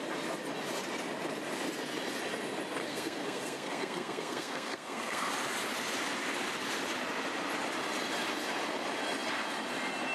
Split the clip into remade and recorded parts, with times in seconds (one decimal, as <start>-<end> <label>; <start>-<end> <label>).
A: 0.0-2.8 recorded; 2.8-5.3 remade; 5.3-10.1 recorded